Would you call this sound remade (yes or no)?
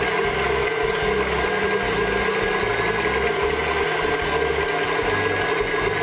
no